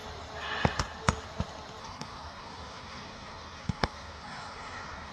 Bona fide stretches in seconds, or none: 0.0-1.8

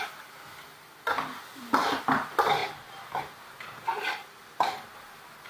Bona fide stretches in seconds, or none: 0.0-5.5